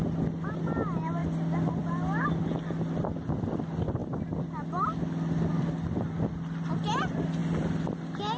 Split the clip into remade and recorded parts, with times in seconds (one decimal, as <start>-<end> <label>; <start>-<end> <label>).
0.0-8.4 recorded